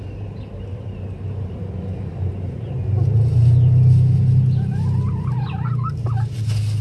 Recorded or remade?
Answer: recorded